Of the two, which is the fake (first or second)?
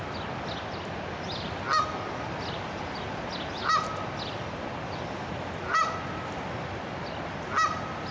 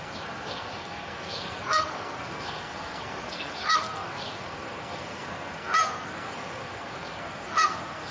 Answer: second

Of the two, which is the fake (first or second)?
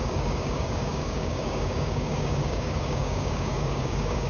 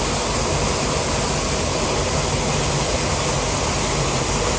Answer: first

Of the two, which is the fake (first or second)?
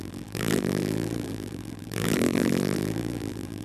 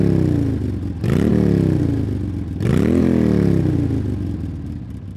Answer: first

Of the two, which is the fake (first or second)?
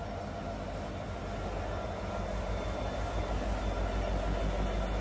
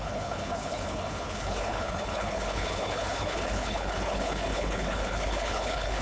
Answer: second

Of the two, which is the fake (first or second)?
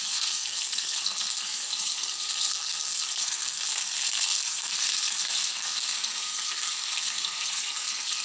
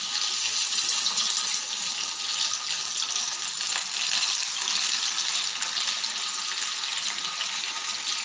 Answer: first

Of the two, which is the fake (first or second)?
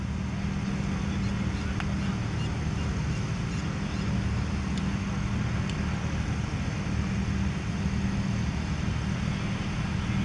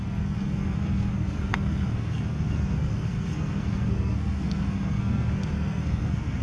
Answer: second